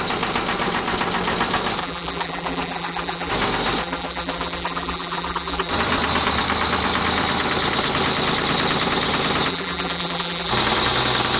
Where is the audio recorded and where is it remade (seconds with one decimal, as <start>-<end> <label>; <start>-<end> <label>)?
0.0-1.8 recorded; 1.8-3.3 remade; 3.3-3.8 recorded; 3.8-5.7 remade; 5.7-9.5 recorded; 9.5-10.5 remade; 10.5-11.4 recorded